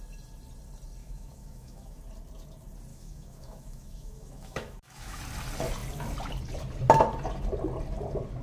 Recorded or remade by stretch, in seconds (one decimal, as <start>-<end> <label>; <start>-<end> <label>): 0.0-1.0 recorded; 1.0-2.0 remade; 2.0-2.9 recorded; 2.9-5.2 remade; 5.2-8.4 recorded